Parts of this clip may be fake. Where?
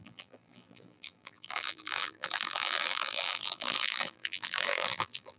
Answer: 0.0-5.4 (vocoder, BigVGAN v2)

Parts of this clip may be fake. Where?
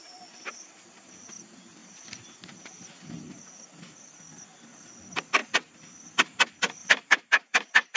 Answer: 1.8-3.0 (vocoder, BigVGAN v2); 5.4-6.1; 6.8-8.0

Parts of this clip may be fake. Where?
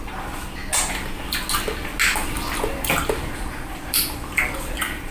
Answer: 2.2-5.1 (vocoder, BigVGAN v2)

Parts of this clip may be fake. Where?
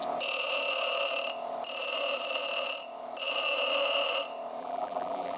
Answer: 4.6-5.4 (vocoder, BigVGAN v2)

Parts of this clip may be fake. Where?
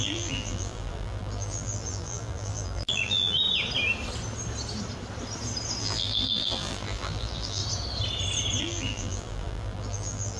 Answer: 0.0-3.4 (vocoder, BigVGAN v2); 5.8-7.6; 8.6-10.4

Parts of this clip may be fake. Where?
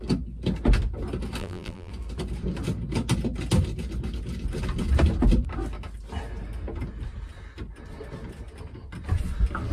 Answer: 1.4-1.9 (vocoder, BigVGAN v2)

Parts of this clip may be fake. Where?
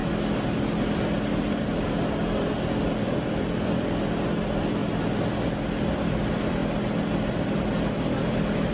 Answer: 1.5-4.8 (vocoder, BigVGAN v2); 5.9-6.6; 7.4-8.7